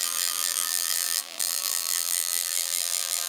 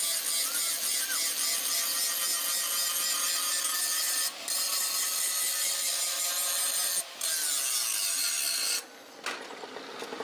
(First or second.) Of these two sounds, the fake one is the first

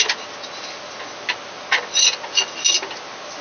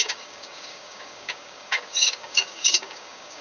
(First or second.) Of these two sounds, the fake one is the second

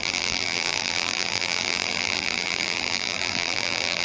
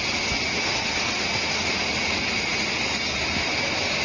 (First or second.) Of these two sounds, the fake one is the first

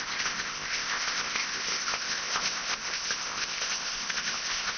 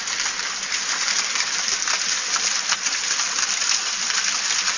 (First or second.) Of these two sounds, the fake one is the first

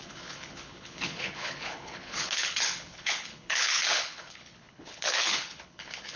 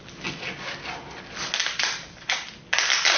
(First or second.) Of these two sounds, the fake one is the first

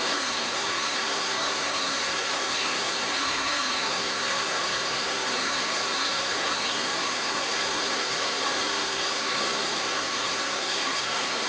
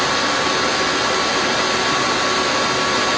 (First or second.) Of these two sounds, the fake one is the first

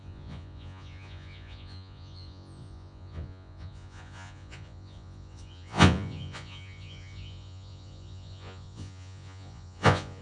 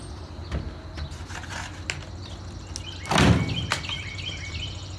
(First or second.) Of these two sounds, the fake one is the first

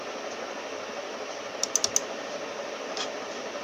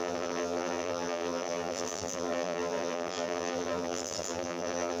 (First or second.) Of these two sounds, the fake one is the second